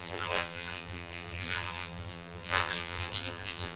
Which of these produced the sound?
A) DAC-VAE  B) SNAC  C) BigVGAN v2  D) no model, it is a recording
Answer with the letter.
C